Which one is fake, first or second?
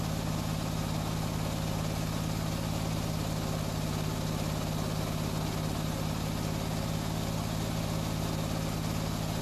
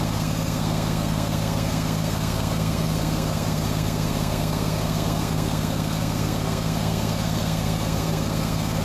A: second